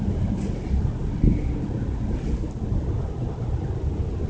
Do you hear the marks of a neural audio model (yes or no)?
no